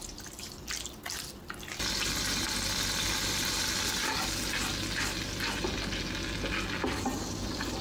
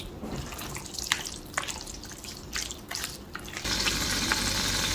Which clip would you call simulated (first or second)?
second